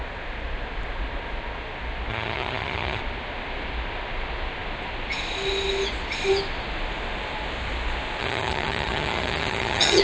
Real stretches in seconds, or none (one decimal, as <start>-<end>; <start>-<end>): 0.0-2.1; 3.0-8.2

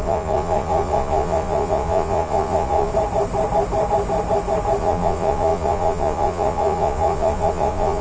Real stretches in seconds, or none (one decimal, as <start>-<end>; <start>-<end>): 2.9-4.8

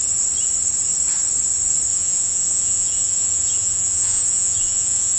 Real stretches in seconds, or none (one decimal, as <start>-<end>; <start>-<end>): 0.0-1.9

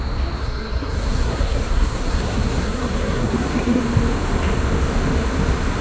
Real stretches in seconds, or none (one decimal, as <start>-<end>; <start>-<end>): 0.0-0.4; 3.8-5.8

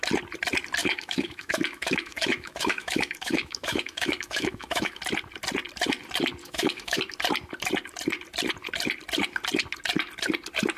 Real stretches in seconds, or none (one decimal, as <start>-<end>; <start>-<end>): 0.0-0.8; 5.0-6.4; 7.0-10.8

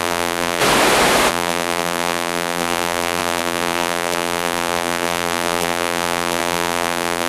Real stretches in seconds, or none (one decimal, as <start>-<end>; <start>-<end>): 0.6-1.3

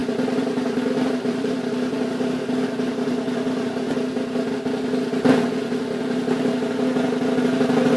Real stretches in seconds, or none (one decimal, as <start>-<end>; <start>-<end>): 2.0-8.0